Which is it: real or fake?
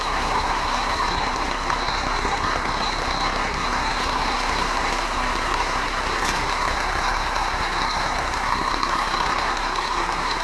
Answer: fake